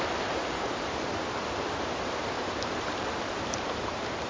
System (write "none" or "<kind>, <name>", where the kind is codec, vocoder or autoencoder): vocoder, BigVGAN v2